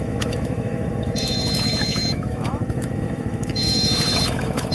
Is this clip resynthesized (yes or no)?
yes